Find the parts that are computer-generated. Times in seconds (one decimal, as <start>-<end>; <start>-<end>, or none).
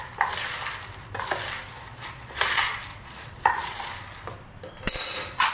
1.7-2.5; 2.9-3.9